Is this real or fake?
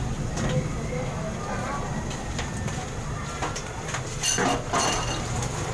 real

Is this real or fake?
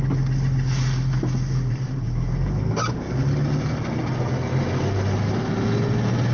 real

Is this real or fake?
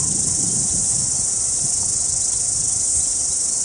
real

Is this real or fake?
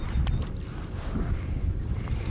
real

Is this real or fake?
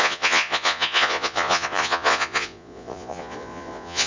fake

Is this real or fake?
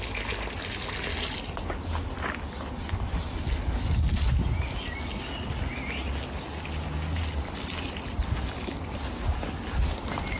real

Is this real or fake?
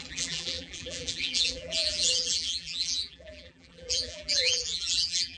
fake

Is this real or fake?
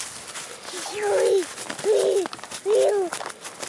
real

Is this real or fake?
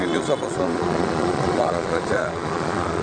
fake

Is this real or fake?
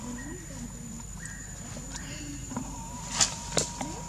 real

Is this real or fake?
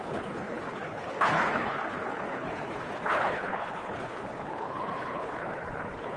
fake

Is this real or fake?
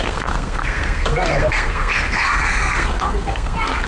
fake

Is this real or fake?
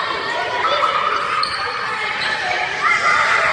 fake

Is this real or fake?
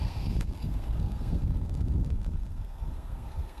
fake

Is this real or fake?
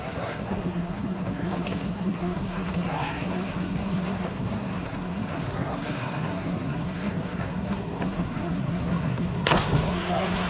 fake